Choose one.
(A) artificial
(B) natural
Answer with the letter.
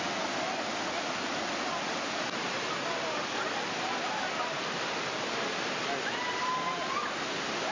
B